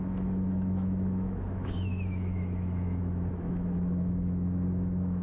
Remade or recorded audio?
remade